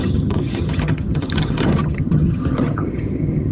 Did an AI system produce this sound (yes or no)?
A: yes